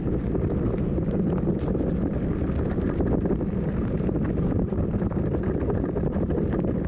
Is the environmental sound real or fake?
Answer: real